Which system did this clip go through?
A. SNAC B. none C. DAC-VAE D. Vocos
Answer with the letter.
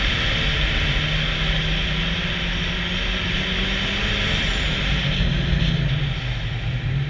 B